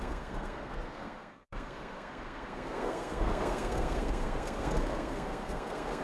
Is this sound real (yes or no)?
no